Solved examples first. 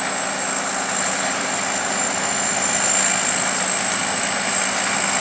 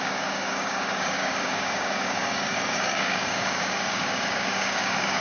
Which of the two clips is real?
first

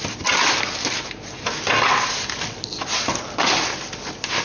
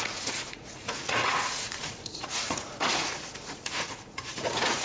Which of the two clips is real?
first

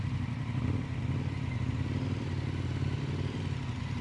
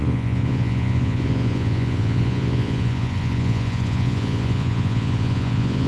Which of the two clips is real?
first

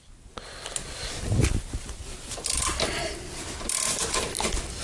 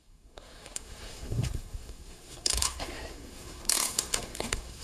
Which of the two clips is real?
first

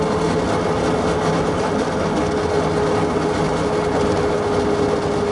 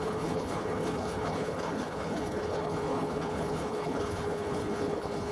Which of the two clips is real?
first